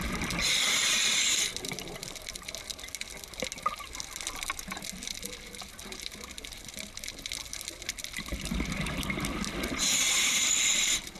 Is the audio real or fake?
real